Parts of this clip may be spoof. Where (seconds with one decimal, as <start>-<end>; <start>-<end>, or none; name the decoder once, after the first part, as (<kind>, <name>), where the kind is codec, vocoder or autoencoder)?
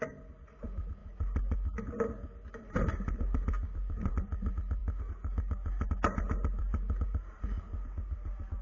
none